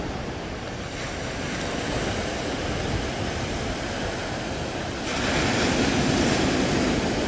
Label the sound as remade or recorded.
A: recorded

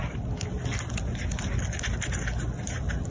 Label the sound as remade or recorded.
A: recorded